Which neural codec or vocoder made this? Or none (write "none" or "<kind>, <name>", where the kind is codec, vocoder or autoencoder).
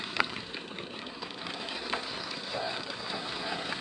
codec, SNAC